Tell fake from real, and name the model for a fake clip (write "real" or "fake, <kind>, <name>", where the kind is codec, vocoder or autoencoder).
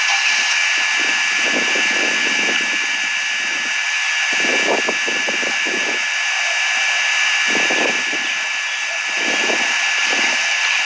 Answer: real